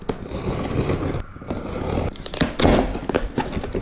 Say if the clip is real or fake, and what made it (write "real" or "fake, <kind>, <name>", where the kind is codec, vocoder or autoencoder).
real